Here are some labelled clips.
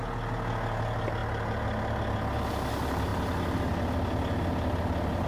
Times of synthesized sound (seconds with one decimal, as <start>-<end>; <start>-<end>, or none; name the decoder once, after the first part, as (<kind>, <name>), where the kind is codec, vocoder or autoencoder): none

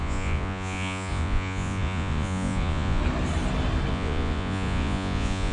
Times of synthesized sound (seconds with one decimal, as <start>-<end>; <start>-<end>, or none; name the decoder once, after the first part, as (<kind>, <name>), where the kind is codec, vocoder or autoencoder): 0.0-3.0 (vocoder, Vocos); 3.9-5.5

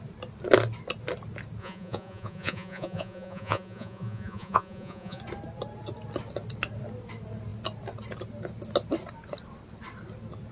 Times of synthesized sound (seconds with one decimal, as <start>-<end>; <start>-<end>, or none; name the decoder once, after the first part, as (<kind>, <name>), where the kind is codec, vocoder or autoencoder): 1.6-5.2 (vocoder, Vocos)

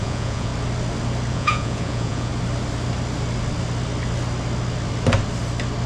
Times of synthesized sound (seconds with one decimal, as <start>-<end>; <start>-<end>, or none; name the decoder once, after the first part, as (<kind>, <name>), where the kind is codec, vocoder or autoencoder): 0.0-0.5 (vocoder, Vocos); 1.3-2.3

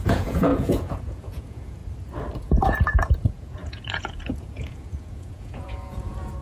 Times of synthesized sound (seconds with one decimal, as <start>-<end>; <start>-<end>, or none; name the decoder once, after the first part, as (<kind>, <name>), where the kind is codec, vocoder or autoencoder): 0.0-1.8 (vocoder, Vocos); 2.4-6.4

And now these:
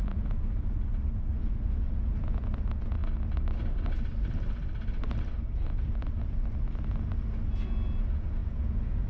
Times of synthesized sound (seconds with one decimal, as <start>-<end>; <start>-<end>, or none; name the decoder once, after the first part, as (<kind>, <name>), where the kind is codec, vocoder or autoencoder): 0.0-3.0 (vocoder, Vocos); 8.0-9.1